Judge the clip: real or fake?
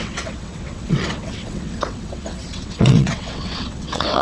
fake